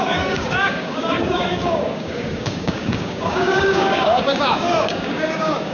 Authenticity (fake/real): fake